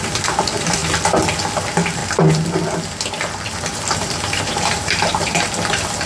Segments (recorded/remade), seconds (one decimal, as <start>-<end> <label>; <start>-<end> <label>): 0.0-0.8 remade; 0.8-1.6 recorded; 1.6-2.0 remade; 2.0-3.5 recorded; 3.5-6.1 remade